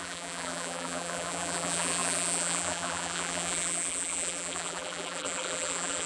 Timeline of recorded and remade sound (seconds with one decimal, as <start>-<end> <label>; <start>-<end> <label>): 0.0-6.1 remade